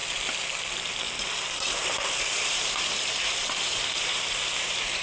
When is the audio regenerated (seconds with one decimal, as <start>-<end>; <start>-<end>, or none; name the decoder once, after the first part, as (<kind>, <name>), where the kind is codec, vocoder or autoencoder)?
2.2-5.0 (vocoder, BigVGAN v2)

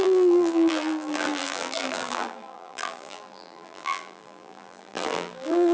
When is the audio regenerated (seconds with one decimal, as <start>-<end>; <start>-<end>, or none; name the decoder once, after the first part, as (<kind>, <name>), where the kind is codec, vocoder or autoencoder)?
0.0-5.7 (vocoder, BigVGAN v2)